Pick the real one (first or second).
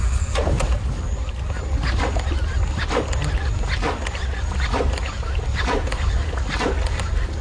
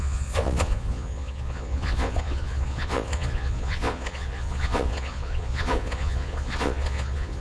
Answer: first